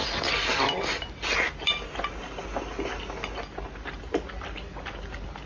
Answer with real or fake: real